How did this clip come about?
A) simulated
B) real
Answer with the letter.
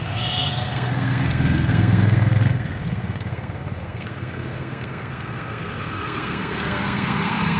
A